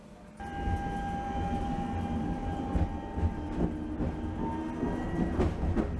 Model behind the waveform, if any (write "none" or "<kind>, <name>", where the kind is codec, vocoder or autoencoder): none